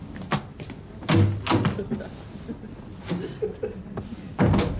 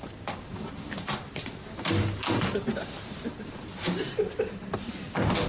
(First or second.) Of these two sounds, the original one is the first